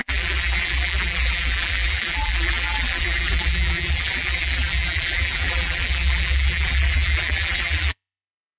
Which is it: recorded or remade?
remade